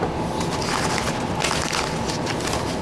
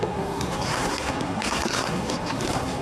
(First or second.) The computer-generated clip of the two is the second